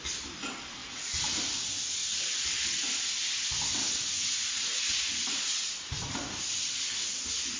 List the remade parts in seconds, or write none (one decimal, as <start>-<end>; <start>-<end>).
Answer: 0.8-1.4; 3.8-5.9